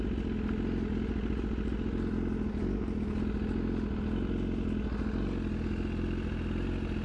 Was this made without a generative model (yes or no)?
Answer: yes